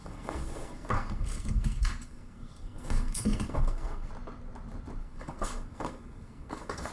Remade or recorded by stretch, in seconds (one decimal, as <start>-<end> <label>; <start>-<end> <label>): 0.0-4.1 remade; 4.1-5.0 recorded; 5.0-6.9 remade